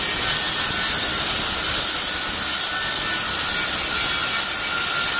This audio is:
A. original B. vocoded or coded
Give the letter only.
A